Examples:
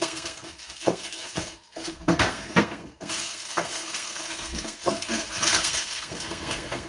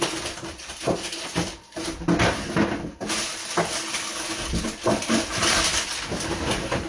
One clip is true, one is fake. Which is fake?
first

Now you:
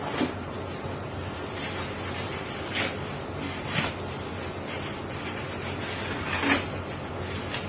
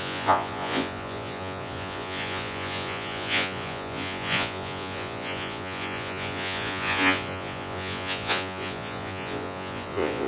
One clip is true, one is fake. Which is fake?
second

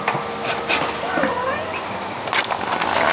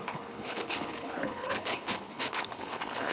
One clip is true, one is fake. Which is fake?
second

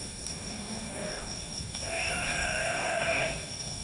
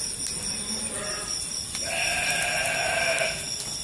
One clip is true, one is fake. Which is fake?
first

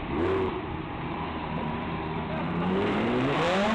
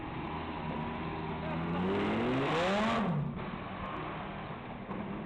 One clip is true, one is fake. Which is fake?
first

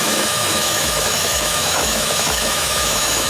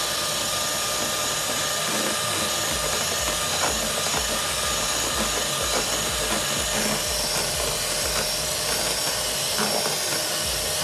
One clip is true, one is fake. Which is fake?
first